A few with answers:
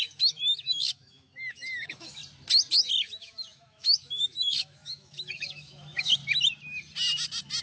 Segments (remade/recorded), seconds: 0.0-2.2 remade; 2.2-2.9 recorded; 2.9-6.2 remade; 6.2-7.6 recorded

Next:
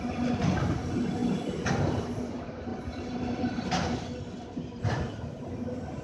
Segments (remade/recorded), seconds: 0.0-1.2 recorded; 1.2-2.3 remade; 2.3-2.7 recorded; 2.7-4.8 remade; 4.8-6.0 recorded

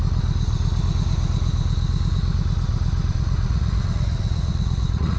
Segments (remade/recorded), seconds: 0.0-3.1 recorded; 3.1-5.2 remade